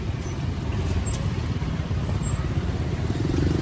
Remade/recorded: remade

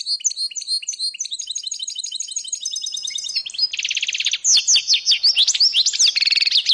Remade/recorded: recorded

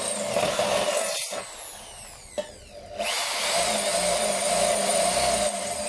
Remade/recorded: recorded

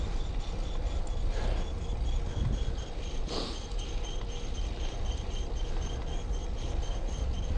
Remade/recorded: recorded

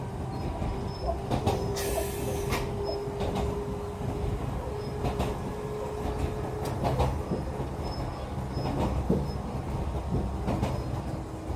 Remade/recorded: recorded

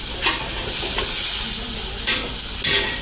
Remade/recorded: recorded